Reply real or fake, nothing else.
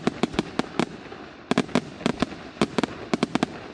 real